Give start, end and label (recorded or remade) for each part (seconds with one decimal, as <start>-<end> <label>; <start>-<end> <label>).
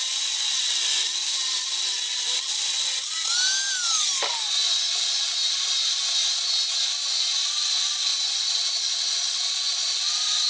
0.0-8.1 recorded; 8.1-8.7 remade; 8.7-10.5 recorded